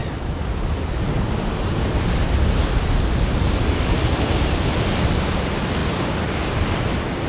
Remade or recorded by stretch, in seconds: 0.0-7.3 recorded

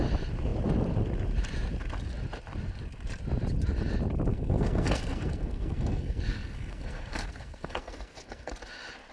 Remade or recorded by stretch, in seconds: 0.0-4.3 recorded; 4.3-8.5 remade; 8.5-9.1 recorded

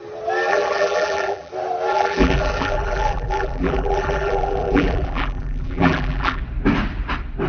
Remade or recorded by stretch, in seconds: 0.0-0.5 recorded; 0.5-1.5 remade; 1.5-1.9 recorded; 1.9-6.4 remade; 6.4-7.5 recorded

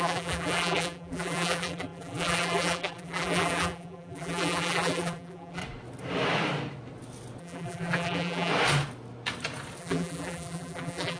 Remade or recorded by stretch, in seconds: 0.0-5.6 remade; 5.6-7.4 recorded; 7.4-8.5 remade; 8.5-9.8 recorded; 9.8-11.2 remade

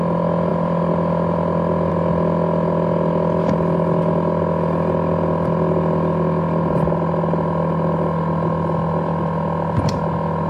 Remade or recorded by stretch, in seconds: 0.0-10.5 recorded

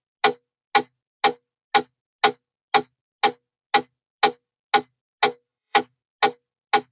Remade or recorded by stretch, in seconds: 0.0-5.5 recorded; 5.5-6.0 remade; 6.0-6.9 recorded

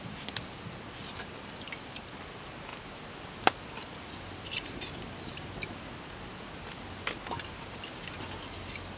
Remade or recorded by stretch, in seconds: 0.0-9.0 recorded